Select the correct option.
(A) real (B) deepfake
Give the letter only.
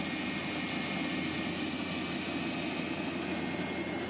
A